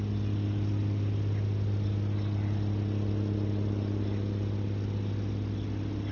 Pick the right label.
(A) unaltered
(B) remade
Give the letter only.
A